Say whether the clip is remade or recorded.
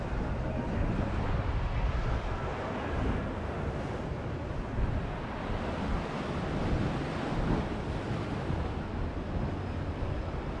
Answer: recorded